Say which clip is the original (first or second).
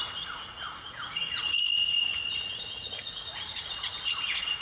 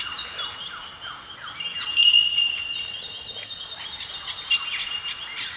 second